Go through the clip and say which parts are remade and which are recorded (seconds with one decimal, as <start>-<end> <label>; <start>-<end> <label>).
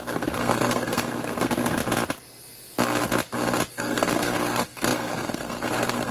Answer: 0.0-1.8 remade; 1.8-3.7 recorded; 3.7-6.1 remade